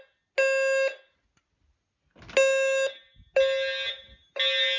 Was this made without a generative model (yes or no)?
yes